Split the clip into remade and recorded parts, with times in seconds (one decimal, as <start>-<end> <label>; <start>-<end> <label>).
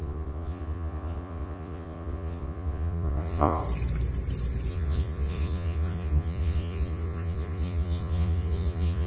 0.0-3.6 remade; 3.6-4.7 recorded; 4.7-9.1 remade